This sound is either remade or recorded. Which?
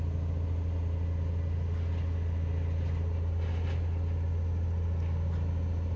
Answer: recorded